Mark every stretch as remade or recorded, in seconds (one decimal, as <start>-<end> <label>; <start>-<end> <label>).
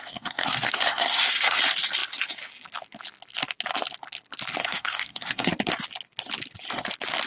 0.0-1.6 remade; 1.6-4.6 recorded; 4.6-5.5 remade; 5.5-7.3 recorded